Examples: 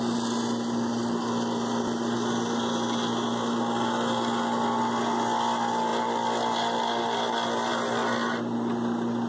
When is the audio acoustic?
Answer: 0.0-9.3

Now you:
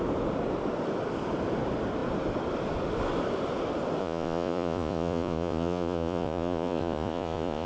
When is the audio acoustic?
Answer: 0.0-4.0